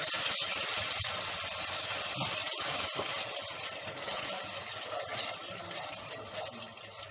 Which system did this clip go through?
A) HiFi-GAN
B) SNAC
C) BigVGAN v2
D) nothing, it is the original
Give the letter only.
D